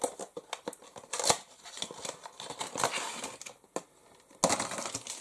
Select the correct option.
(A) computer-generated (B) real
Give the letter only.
B